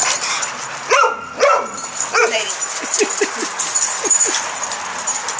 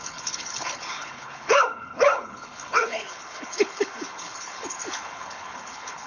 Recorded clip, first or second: first